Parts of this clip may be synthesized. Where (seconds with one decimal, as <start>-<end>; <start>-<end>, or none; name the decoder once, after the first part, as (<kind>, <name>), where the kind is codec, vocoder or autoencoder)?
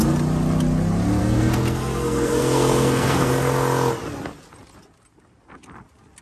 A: 1.2-3.3 (codec, SNAC)